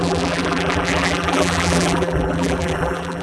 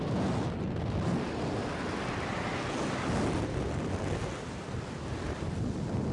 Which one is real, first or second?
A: second